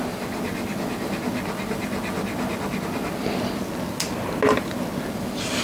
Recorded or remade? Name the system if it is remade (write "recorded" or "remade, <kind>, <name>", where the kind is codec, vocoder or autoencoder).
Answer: recorded